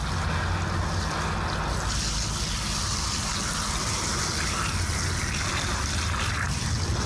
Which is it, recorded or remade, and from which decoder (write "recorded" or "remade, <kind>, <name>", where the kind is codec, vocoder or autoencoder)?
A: recorded